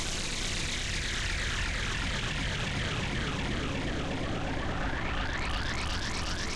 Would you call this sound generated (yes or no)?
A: no